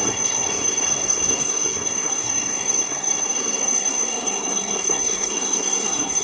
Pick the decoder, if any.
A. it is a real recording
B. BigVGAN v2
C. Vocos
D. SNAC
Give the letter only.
D